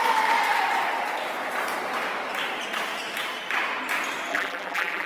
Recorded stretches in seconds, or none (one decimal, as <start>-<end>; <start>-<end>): 0.0-4.3